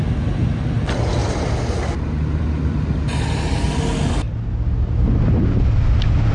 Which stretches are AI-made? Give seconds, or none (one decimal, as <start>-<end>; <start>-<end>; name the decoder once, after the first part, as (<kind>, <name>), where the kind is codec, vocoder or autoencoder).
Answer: none